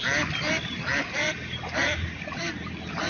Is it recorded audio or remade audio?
recorded